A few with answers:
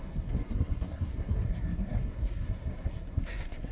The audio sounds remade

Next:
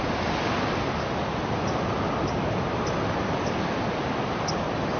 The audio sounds recorded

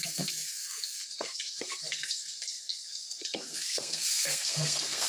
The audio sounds remade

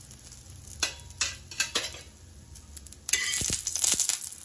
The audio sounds recorded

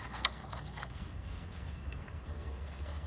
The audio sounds remade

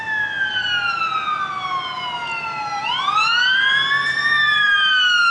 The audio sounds recorded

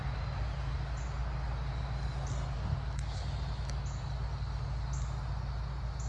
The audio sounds recorded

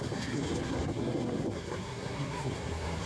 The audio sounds remade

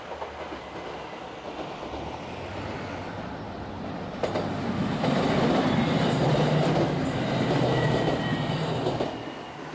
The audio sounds recorded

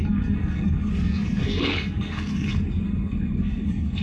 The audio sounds remade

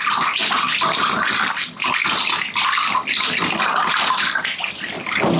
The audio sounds recorded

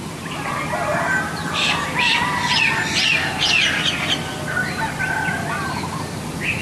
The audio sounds recorded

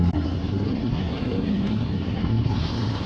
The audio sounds remade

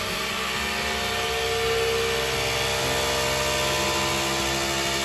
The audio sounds recorded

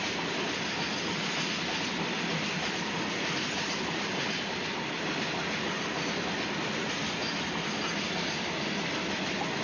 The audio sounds recorded